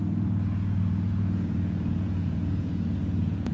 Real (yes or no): no